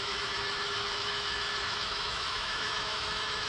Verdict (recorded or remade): remade